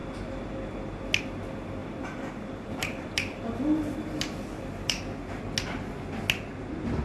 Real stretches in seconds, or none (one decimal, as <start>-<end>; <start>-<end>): 0.0-1.8; 5.0-7.0